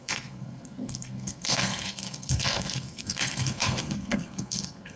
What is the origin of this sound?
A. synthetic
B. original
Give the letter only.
A